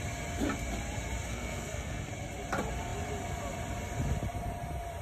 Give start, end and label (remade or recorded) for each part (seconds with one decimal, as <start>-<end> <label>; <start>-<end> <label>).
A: 0.0-1.3 recorded; 1.3-2.1 remade; 2.1-5.0 recorded